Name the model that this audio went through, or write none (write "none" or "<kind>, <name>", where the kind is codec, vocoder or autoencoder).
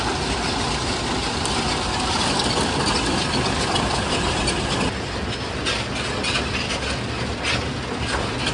none